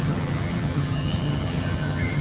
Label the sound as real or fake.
fake